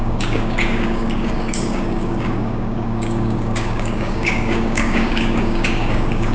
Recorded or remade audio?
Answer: remade